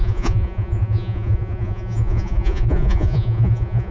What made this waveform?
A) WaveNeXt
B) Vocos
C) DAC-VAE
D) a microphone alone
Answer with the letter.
B